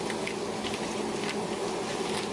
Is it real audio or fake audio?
real